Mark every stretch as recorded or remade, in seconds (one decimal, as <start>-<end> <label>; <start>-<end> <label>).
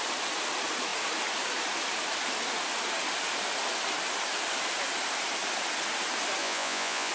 0.0-6.4 recorded; 6.4-7.1 remade